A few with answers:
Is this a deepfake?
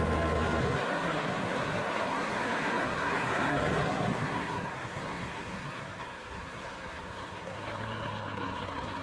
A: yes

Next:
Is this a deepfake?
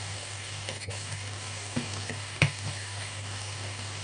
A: yes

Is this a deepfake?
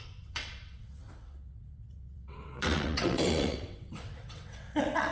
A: yes